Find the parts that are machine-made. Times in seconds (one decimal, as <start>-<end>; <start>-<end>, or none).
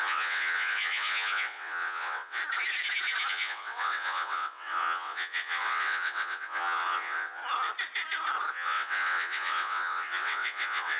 0.0-2.4; 3.3-7.4; 8.5-11.0